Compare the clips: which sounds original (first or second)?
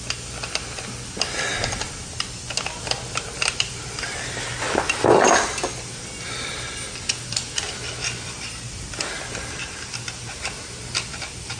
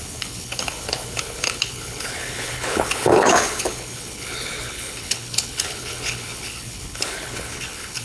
first